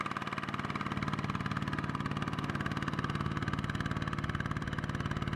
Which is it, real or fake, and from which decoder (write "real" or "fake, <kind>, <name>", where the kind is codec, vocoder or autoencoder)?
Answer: real